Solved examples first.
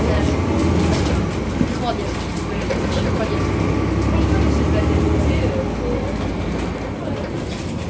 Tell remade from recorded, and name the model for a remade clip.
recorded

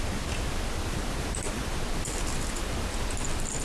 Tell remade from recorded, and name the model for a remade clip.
recorded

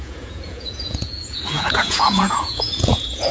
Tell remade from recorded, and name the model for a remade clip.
remade, vocoder, Vocos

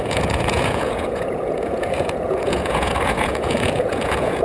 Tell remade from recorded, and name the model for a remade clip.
remade, vocoder, Vocos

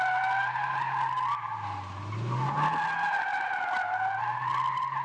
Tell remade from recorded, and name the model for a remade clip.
recorded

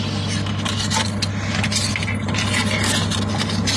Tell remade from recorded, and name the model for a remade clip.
recorded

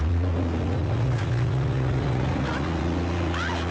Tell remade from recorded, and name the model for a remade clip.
remade, vocoder, Vocos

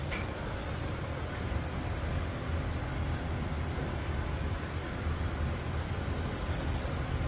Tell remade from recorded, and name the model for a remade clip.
recorded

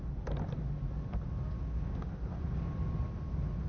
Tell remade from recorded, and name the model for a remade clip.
recorded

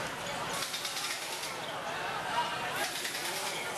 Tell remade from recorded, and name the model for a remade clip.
recorded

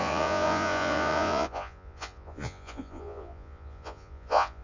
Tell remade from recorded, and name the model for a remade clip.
remade, vocoder, Vocos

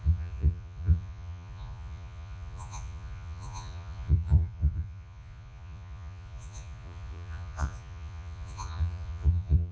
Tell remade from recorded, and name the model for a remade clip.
remade, vocoder, Vocos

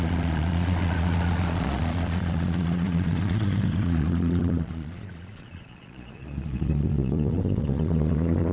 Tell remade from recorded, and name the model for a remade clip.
remade, vocoder, Vocos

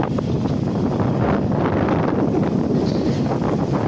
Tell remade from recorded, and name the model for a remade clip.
recorded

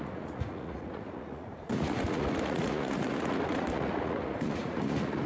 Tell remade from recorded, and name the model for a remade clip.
remade, vocoder, Vocos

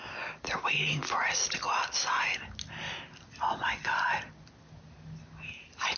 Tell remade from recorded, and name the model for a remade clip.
recorded